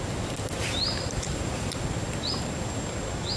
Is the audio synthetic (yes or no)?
no